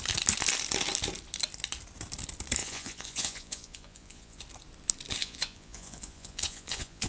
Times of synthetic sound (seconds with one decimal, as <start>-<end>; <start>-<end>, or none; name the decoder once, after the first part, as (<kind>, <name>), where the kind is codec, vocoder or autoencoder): 2.6-4.4 (vocoder, Vocos); 5.2-7.1